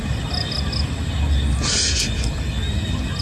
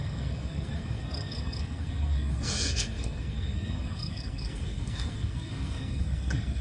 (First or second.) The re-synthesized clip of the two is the second